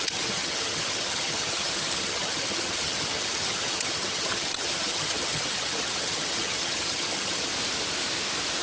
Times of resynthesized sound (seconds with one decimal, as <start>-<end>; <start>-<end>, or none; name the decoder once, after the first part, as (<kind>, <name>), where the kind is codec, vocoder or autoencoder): 0.0-7.5 (vocoder, HiFi-GAN)